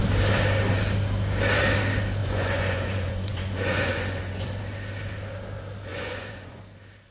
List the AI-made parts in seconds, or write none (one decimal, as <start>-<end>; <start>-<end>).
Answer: 2.2-4.5; 5.9-6.6